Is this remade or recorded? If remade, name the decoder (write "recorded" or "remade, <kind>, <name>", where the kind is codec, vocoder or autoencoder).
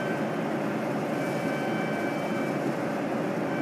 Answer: recorded